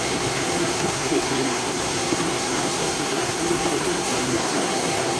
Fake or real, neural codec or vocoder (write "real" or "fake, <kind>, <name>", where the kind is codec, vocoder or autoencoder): fake, codec, SNAC